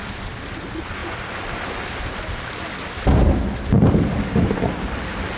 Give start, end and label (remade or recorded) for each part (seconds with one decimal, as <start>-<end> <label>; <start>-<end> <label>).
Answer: 0.0-5.4 recorded